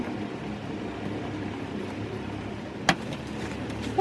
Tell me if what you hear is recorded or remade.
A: recorded